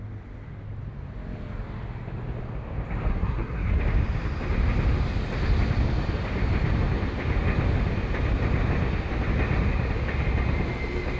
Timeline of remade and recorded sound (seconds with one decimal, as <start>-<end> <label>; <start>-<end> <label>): 0.0-3.1 recorded; 3.1-3.8 remade; 3.8-11.2 recorded